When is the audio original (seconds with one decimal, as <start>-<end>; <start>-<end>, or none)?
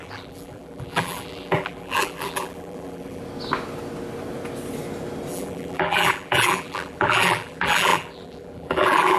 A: 3.2-5.3